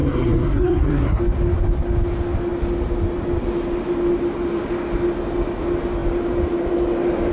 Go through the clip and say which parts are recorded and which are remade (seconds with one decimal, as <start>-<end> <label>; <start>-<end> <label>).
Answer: 0.0-1.2 remade; 1.2-7.3 recorded